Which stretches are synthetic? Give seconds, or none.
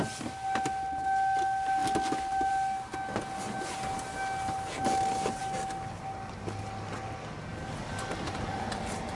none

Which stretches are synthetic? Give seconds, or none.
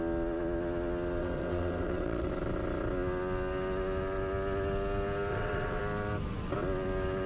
1.2-2.3 (vocoder, WaveNeXt); 5.3-5.8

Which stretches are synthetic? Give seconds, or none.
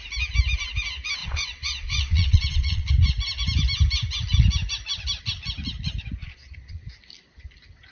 1.2-2.9 (vocoder, Vocos); 6.2-6.8